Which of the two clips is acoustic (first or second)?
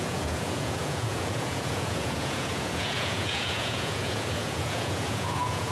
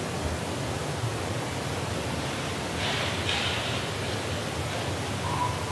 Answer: second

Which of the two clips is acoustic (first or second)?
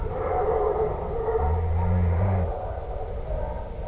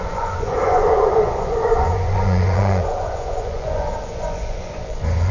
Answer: first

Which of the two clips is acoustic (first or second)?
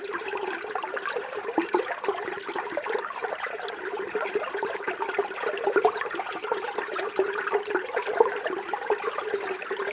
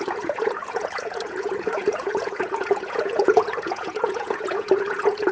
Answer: first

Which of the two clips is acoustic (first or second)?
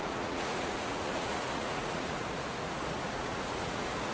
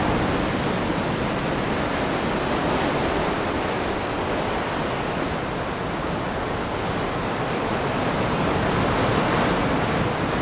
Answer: second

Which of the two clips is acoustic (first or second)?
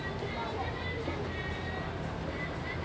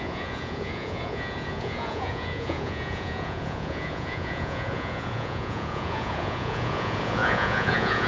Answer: first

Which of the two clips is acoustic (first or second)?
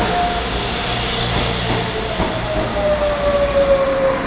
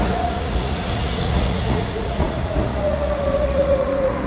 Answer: first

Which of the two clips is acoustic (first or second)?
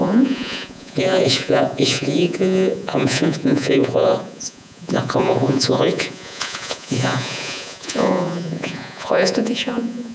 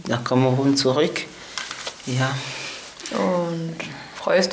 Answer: second